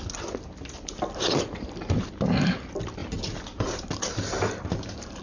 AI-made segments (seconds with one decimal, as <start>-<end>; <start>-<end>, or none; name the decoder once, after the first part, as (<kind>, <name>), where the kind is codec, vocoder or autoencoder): 4.3-5.2 (vocoder, BigVGAN v2)